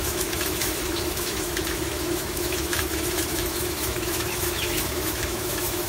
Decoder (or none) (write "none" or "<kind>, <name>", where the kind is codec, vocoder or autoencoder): autoencoder, DAC-VAE